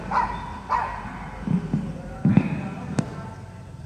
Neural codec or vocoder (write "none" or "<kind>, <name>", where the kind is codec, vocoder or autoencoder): none